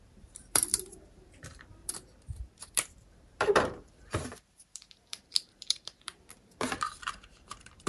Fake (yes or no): yes